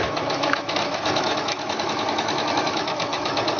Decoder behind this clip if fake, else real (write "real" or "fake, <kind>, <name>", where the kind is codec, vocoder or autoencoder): fake, autoencoder, DAC-VAE